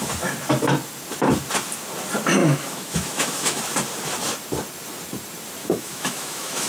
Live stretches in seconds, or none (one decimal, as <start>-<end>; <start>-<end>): 0.0-2.4; 3.6-5.6